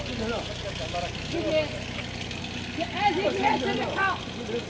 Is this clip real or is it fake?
real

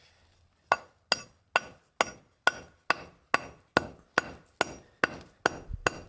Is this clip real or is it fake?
real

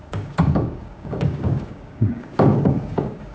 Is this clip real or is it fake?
fake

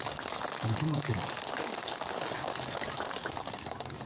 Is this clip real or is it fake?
fake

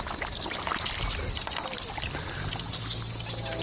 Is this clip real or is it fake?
real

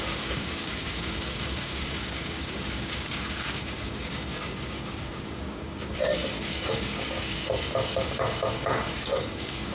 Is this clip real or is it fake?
fake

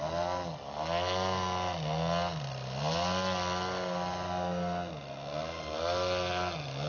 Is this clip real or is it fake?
real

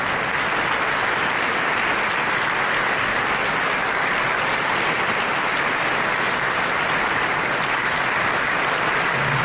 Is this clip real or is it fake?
real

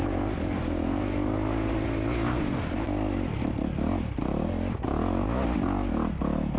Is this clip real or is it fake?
real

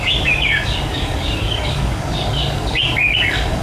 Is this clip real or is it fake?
fake